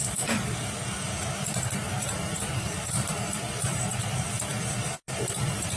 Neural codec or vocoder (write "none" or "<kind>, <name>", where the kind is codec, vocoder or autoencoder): vocoder, BigVGAN v2